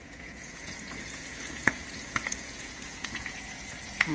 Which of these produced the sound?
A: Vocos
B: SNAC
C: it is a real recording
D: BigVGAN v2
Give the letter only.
A